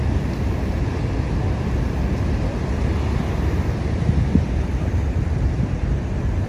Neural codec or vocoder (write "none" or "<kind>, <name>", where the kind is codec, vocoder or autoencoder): none